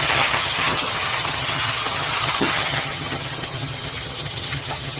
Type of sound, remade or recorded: remade